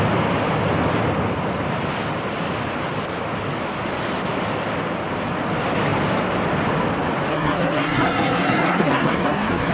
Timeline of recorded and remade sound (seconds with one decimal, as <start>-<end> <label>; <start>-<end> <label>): 0.0-7.3 recorded; 7.3-9.7 remade